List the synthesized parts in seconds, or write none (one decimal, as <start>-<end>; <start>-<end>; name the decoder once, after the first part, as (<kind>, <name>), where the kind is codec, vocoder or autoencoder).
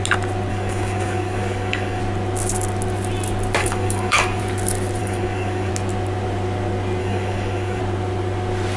0.5-2.0 (codec, DAC); 3.6-4.4; 5.0-5.7; 7.0-7.8